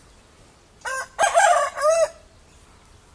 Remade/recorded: recorded